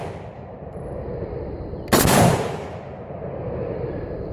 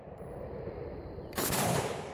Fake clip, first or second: second